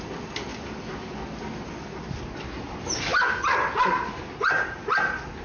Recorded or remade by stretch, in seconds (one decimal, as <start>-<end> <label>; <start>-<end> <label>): 0.0-5.4 recorded